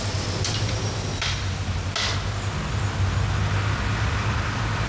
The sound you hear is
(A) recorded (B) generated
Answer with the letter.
A